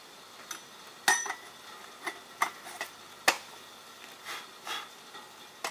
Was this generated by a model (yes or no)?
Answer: no